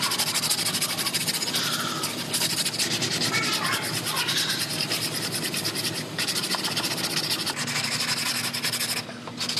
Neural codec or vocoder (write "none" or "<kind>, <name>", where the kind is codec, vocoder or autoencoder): none